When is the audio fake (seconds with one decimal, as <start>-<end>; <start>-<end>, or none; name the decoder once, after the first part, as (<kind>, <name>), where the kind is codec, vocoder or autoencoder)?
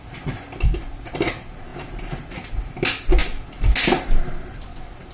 none